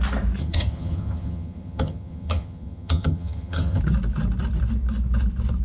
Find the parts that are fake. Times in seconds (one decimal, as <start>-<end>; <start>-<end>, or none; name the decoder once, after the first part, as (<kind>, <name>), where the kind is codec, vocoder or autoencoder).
0.4-3.8 (vocoder, HiFi-GAN)